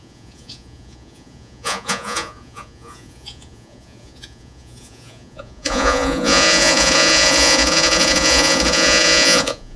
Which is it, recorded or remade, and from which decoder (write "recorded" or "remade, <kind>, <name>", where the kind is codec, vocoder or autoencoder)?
remade, vocoder, Vocos